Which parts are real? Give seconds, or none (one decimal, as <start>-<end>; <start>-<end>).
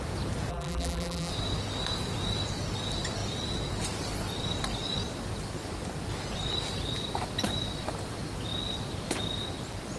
0.0-0.5; 1.3-10.0